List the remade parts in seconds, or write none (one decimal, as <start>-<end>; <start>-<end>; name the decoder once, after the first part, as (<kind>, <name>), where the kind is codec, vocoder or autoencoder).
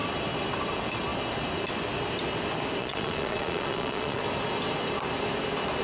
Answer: 2.8-4.2 (vocoder, Vocos)